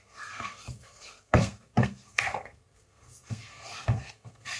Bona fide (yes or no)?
no